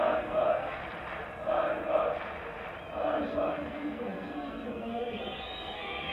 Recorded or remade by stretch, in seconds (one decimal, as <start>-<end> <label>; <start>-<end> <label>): 0.0-0.8 remade; 0.8-3.3 recorded; 3.3-6.1 remade